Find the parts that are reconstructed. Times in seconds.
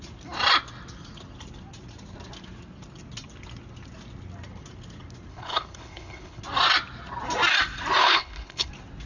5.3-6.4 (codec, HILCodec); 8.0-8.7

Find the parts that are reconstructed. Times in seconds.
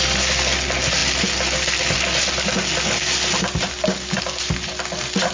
none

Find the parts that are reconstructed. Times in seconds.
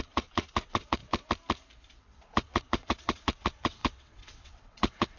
0.0-1.0 (vocoder, WaveNeXt); 1.9-5.2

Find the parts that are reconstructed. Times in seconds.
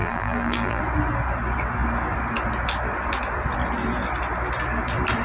0.0-0.8 (vocoder, BigVGAN v2)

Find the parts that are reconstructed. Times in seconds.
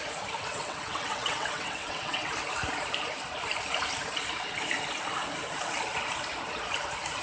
0.5-2.3 (vocoder, WaveNeXt)